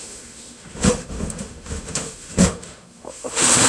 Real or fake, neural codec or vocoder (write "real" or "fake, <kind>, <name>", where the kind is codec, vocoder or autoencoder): fake, autoencoder, DAC-VAE